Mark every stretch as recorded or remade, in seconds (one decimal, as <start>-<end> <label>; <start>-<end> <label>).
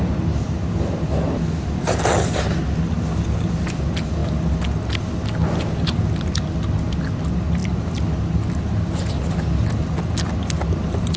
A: 0.0-11.2 recorded